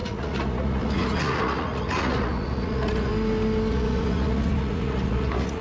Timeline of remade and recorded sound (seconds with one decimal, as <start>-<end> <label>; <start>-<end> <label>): 0.0-3.1 remade; 3.1-3.7 recorded; 3.7-5.6 remade